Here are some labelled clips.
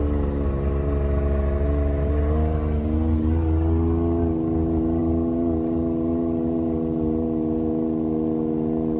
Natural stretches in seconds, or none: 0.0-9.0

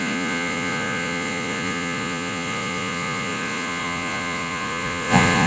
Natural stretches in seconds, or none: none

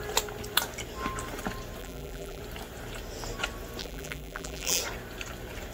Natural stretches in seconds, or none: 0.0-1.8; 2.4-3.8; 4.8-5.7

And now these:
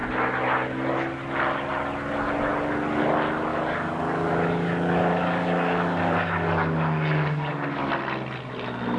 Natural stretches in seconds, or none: 0.0-3.5; 7.9-9.0

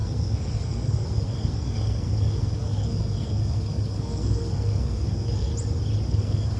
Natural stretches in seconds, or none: 5.5-6.1

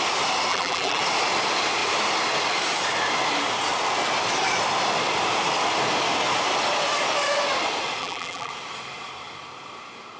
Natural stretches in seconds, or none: 0.0-0.5; 1.0-8.0; 8.5-10.2

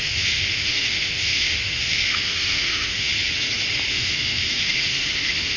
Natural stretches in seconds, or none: 3.1-3.9